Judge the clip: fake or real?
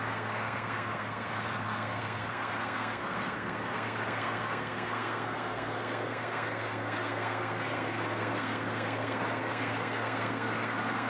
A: fake